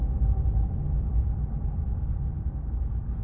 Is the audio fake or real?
real